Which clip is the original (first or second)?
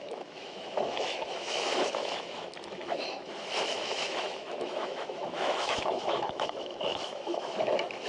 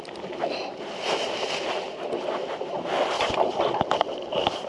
second